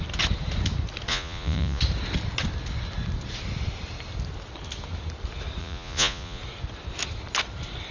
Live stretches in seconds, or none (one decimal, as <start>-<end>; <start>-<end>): 0.0-1.1; 1.8-5.6; 6.4-7.9